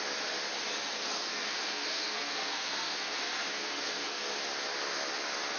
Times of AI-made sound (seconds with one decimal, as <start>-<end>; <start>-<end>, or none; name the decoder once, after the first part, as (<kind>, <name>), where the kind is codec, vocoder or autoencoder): 0.9-4.3 (codec, SNAC)